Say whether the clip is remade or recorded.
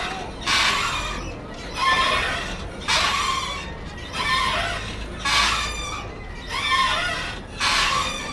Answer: recorded